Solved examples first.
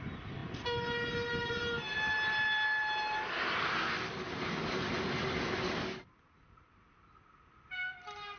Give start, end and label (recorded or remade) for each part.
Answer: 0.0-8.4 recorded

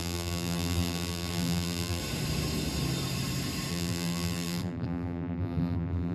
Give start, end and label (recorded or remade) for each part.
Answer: 0.0-2.0 remade; 2.0-3.7 recorded; 3.7-6.1 remade

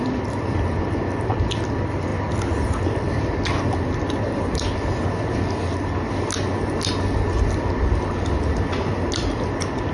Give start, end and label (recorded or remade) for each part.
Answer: 0.0-9.9 recorded

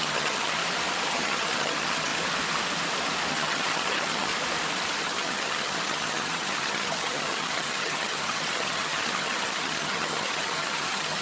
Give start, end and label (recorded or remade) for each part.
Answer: 0.0-0.6 remade; 0.6-1.1 recorded; 1.1-2.1 remade; 2.1-3.3 recorded; 3.3-4.3 remade; 4.3-5.0 recorded; 5.0-11.2 remade